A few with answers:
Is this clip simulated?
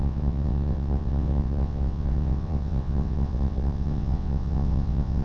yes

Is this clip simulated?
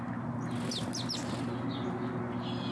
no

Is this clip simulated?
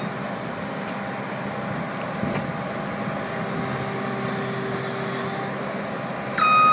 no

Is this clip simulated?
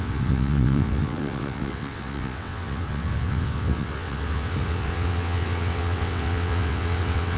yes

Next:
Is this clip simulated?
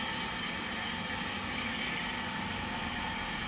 no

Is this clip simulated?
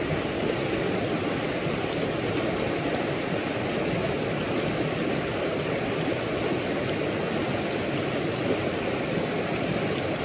no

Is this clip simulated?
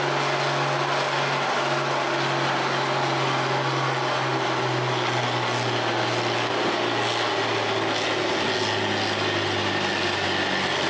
no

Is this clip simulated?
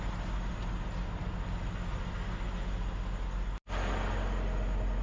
no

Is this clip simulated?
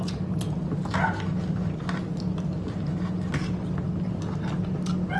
no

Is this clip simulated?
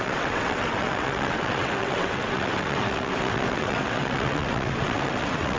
yes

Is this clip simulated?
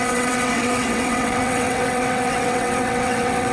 yes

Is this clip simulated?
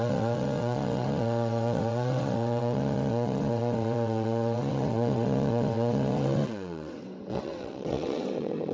yes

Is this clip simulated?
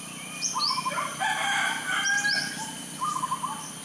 no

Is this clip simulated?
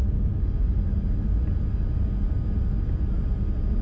no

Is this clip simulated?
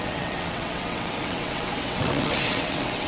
yes